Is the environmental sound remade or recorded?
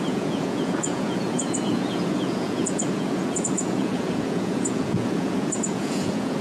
remade